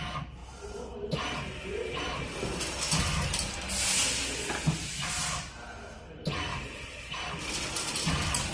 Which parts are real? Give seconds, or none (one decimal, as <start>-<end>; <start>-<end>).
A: 0.0-6.5; 7.3-8.5